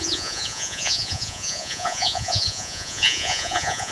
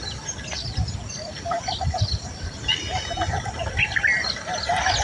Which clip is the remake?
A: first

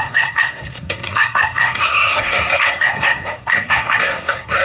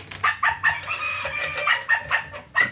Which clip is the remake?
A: first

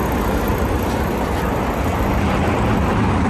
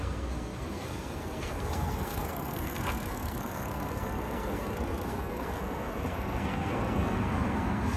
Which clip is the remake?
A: second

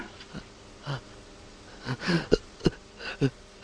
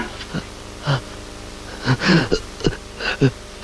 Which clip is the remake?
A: first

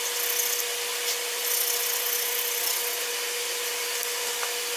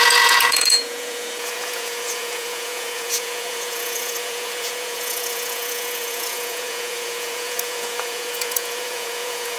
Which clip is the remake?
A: second